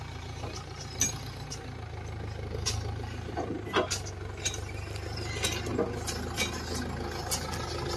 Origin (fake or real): real